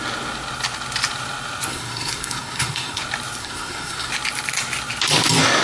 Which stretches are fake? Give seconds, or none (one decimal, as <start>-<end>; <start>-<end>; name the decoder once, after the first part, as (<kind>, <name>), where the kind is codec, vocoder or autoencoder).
1.7-3.0 (codec, SNAC); 3.4-4.1